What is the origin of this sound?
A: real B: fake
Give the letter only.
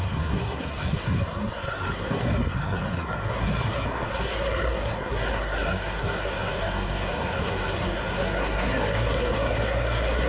B